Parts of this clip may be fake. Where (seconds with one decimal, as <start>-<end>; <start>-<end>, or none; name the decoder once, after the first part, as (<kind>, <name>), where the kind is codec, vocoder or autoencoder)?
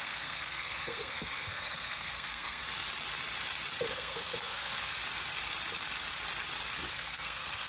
0.0-2.6 (codec, SNAC); 3.9-4.9; 6.9-7.7